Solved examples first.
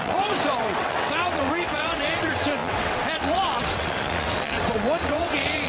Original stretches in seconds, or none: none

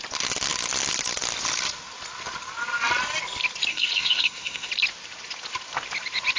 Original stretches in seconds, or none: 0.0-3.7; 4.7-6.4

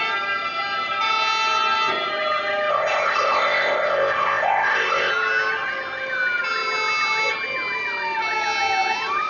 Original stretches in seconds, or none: 0.0-2.7; 5.1-9.3

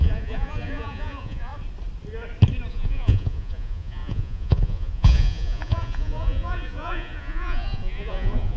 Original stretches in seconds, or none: 1.5-2.7